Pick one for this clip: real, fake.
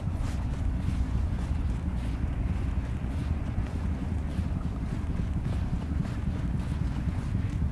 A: fake